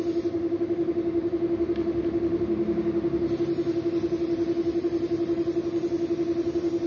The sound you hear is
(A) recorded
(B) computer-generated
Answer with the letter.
A